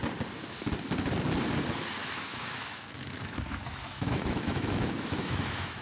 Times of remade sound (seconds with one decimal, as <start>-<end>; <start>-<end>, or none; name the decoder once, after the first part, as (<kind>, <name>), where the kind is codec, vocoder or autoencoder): 2.0-5.8 (autoencoder, DAC-VAE)